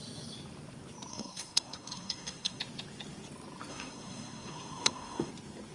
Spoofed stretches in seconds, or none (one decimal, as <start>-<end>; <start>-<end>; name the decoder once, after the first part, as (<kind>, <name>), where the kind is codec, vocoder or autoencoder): 1.1-2.6 (codec, SNAC); 3.7-5.3

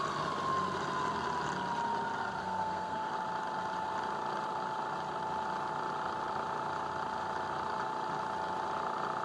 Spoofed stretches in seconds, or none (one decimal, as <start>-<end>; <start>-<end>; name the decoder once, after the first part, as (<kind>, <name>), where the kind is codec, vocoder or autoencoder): 2.4-3.1 (codec, SNAC)

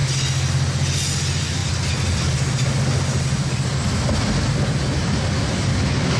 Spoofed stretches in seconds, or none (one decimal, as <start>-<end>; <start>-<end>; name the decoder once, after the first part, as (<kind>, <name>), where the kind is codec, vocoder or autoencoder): none

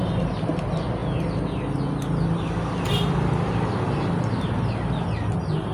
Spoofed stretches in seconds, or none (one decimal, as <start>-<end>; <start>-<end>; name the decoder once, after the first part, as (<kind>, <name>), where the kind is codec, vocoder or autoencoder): none

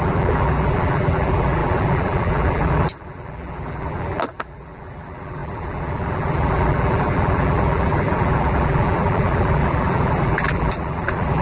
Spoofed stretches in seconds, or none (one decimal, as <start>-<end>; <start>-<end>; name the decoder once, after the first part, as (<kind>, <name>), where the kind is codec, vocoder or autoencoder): 0.0-11.4 (vocoder, BigVGAN v2)

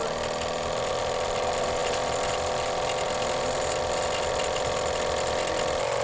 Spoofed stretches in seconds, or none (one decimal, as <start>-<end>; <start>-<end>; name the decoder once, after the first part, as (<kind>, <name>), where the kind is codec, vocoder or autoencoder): none

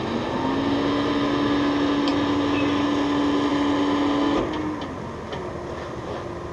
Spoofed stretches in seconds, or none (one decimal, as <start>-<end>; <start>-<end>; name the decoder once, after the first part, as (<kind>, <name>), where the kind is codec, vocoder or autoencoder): none

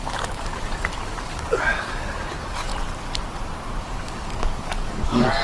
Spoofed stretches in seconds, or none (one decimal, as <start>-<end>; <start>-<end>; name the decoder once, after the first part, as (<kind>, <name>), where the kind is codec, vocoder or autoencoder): 0.0-2.7 (codec, DAC); 3.8-5.4